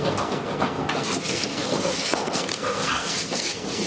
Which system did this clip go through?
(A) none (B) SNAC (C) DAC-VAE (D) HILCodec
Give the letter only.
B